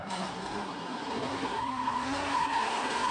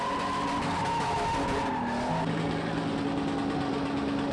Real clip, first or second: second